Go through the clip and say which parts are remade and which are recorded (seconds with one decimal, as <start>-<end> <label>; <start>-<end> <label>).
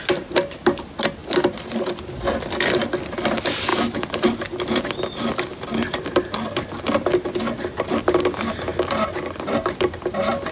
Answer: 0.0-10.5 recorded